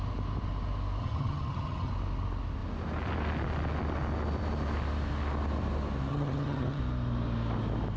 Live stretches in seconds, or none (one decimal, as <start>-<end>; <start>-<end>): 0.0-1.0; 1.9-6.1; 6.8-8.0